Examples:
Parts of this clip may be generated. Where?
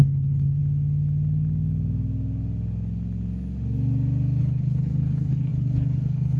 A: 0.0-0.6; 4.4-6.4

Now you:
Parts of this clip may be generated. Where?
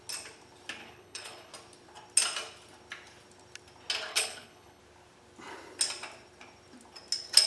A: 0.8-1.5; 4.1-4.8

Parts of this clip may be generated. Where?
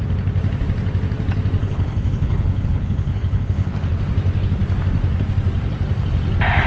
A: 1.6-3.7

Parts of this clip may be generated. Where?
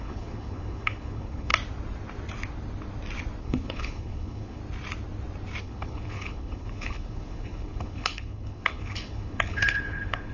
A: 0.0-1.5; 3.4-4.6; 5.6-10.3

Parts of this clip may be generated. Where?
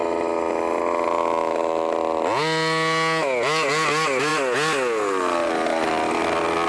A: none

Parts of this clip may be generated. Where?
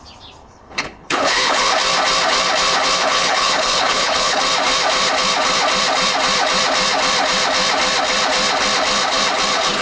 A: 0.4-1.7; 3.0-4.4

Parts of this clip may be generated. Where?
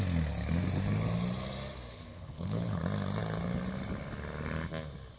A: 1.9-2.8